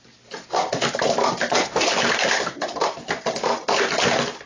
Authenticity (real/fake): real